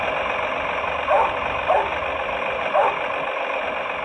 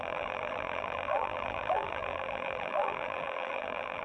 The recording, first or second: first